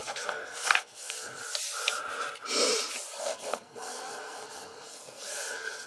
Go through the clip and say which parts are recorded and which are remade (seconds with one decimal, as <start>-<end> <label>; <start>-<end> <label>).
0.0-1.4 remade; 1.4-3.2 recorded; 3.2-5.9 remade